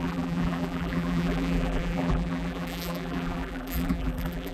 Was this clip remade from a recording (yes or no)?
yes